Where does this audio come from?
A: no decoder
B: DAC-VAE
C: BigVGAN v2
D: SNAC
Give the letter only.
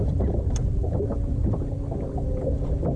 A